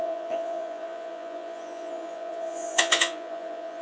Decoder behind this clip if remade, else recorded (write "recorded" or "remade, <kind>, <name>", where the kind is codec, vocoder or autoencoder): remade, vocoder, Vocos